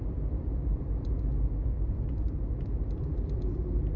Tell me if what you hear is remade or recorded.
remade